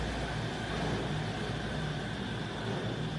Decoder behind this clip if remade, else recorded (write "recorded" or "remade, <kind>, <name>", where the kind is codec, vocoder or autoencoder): recorded